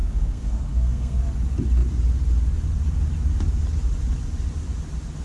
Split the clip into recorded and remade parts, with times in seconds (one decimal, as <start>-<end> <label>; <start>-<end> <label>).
0.0-1.2 remade; 1.2-5.2 recorded